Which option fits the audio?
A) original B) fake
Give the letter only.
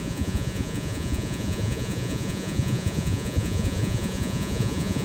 B